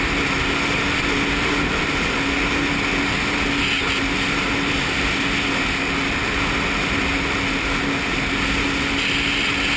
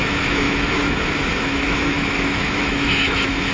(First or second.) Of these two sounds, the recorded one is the first